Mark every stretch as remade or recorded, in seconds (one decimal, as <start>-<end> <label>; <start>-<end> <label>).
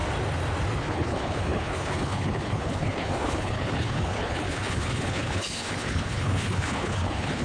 0.0-0.8 recorded; 0.8-7.4 remade